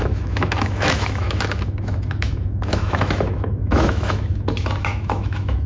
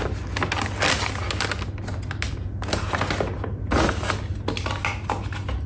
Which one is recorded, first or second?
second